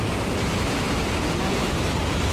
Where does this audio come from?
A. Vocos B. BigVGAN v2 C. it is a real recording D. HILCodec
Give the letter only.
C